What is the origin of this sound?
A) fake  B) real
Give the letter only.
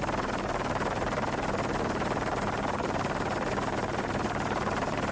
A